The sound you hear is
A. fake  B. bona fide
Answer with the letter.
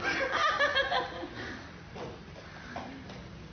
B